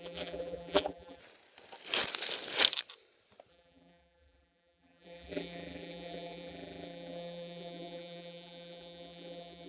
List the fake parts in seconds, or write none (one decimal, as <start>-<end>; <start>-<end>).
0.0-1.2; 3.5-9.7